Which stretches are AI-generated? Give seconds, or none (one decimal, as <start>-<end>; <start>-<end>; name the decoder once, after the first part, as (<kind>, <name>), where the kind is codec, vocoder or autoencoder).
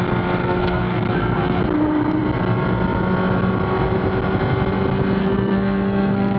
0.4-1.6 (codec, SNAC); 5.2-6.4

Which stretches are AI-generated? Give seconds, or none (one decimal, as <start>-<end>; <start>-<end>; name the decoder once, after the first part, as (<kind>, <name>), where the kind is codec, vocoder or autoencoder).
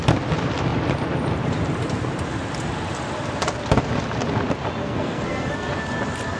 4.8-5.7 (codec, SNAC)